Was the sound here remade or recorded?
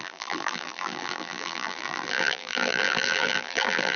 remade